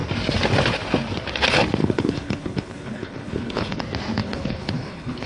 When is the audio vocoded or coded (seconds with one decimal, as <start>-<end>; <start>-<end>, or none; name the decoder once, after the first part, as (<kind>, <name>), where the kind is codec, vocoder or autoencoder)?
1.8-3.8 (codec, HILCodec); 4.2-5.3